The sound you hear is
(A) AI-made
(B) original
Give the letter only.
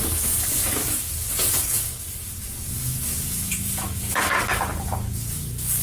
A